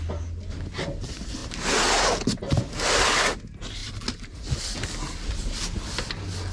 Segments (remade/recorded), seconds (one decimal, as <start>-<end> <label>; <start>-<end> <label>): 0.0-6.5 recorded

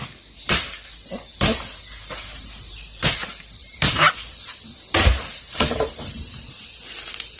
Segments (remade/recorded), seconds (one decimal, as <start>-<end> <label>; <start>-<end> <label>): 0.0-1.3 recorded; 1.3-3.0 remade; 3.0-3.6 recorded; 3.6-4.6 remade; 4.6-5.3 recorded; 5.3-6.8 remade; 6.8-7.4 recorded

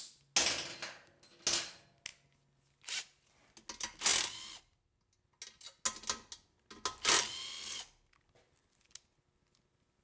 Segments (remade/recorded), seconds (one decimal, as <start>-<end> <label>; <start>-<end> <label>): 0.0-10.0 recorded

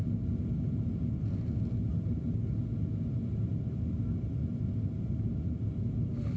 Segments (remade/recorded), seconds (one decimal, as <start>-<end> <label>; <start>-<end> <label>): 0.0-6.4 recorded

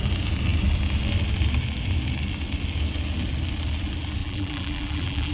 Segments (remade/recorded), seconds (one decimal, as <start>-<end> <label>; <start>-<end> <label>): 0.0-4.2 recorded; 4.2-5.3 remade

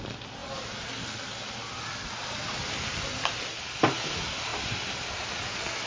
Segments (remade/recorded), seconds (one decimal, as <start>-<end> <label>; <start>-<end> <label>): 0.0-4.5 remade; 4.5-5.9 recorded

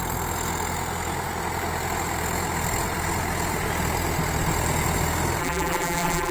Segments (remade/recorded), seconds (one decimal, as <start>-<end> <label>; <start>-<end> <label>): 0.0-5.4 recorded; 5.4-6.3 remade